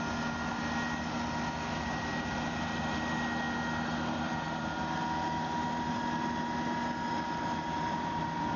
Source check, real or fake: real